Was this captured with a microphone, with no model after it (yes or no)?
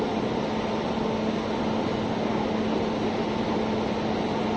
yes